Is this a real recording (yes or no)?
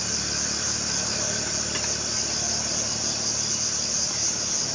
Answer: yes